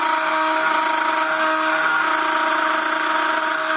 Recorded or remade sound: recorded